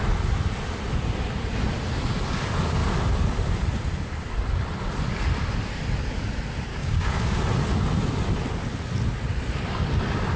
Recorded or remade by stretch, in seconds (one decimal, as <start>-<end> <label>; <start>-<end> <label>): 0.0-6.7 recorded; 6.7-7.4 remade; 7.4-10.4 recorded